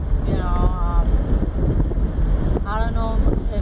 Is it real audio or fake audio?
real